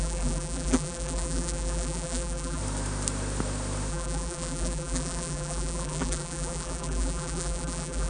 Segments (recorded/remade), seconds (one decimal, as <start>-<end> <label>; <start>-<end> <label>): 0.0-2.6 remade; 2.6-3.9 recorded; 3.9-8.1 remade